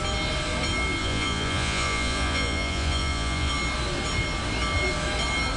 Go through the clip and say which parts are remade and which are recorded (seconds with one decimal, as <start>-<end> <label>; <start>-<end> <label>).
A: 0.0-1.0 recorded; 1.0-3.5 remade; 3.5-5.6 recorded